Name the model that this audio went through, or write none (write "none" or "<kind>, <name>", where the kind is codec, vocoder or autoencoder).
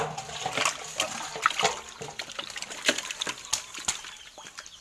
none